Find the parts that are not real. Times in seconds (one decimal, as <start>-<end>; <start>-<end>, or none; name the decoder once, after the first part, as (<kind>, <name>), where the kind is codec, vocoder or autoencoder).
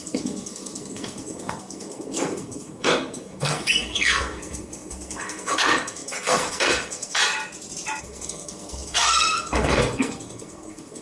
0.0-7.2 (codec, SNAC); 8.0-11.0